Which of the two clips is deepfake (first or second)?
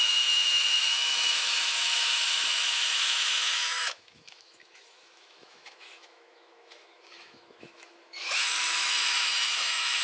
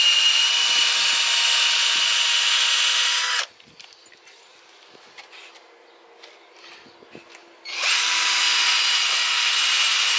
first